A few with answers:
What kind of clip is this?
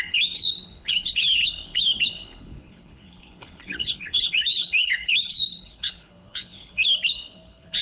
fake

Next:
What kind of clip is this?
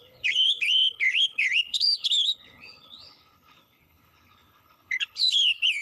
fake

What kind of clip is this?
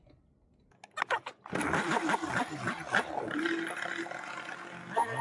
real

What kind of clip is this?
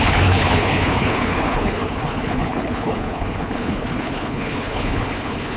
fake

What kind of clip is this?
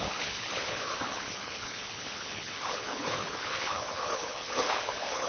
fake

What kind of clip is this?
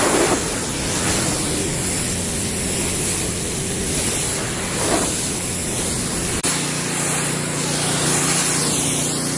real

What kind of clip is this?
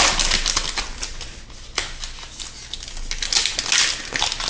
real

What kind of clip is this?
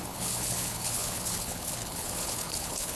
fake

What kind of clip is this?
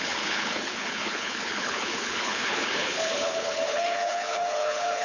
fake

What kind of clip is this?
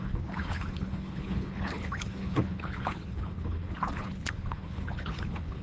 fake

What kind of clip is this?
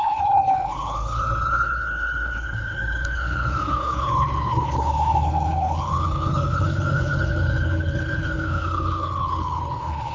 fake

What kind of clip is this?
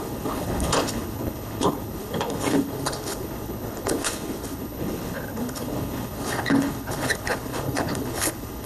fake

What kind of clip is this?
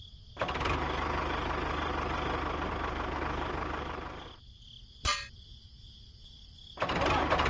real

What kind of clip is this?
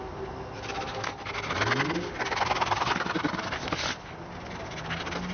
real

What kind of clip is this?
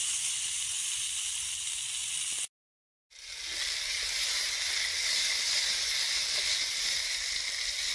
real